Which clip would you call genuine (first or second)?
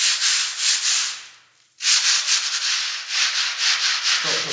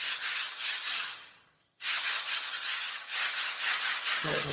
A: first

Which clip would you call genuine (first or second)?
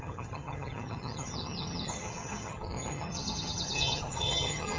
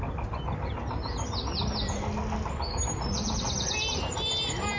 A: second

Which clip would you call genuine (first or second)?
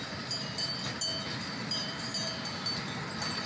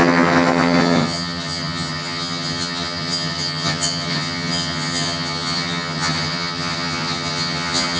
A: first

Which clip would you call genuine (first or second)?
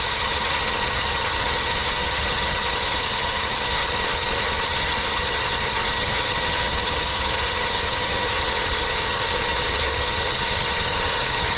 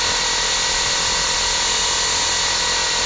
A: second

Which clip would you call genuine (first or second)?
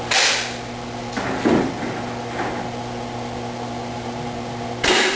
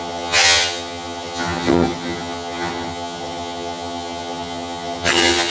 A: first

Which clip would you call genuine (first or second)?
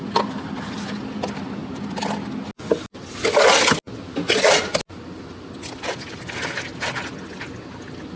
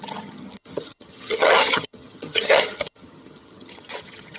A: first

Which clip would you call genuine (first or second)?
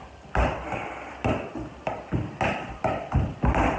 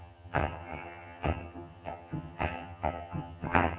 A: first